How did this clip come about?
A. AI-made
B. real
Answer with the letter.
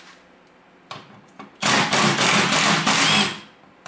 B